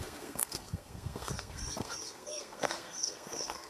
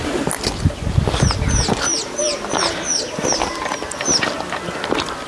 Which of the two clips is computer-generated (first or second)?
first